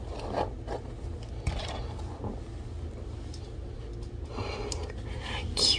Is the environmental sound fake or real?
real